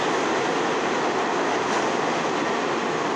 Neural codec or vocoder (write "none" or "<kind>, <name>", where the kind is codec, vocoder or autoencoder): none